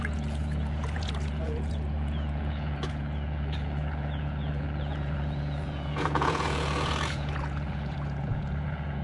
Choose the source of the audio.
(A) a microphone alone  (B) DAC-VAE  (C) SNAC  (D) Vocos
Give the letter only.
D